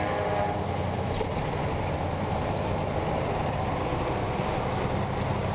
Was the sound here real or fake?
real